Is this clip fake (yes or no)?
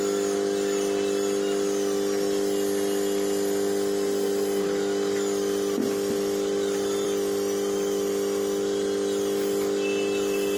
no